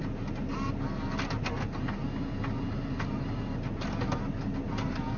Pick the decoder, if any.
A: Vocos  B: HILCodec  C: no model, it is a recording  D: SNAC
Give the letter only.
C